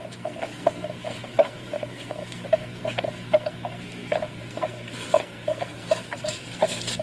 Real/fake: fake